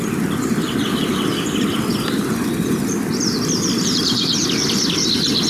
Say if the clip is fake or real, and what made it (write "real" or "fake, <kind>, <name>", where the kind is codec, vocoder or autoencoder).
fake, vocoder, BigVGAN v2